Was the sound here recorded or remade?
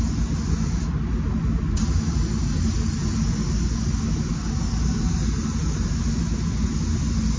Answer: recorded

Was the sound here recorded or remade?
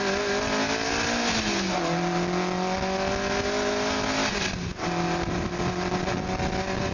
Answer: recorded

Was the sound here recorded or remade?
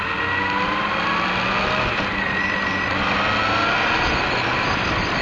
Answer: recorded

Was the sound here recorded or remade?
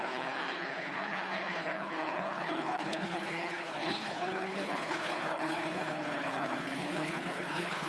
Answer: remade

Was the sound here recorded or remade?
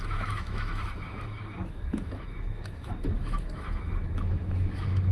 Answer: remade